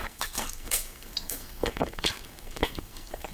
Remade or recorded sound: remade